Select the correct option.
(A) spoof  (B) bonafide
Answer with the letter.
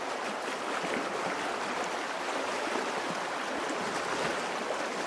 B